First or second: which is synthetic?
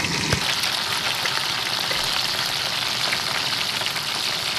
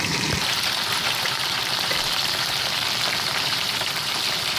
second